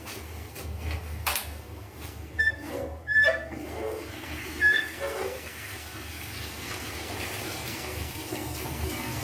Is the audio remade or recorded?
remade